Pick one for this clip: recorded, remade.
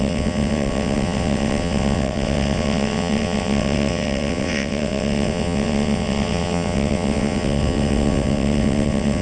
remade